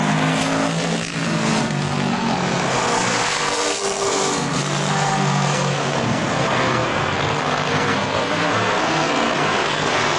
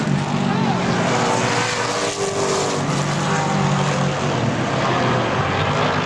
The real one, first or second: second